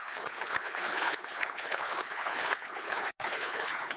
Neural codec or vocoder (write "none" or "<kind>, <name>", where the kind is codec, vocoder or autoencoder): codec, HILCodec